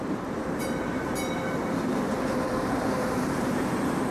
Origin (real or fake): fake